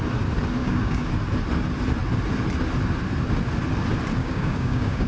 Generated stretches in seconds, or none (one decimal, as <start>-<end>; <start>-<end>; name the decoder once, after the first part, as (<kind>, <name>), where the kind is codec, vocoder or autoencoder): 0.6-1.1 (codec, DAC); 4.2-5.1